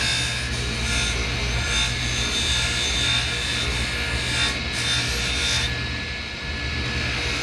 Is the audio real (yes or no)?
yes